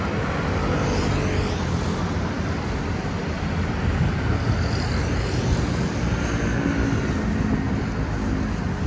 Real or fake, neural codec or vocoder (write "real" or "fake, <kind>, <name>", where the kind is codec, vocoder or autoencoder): real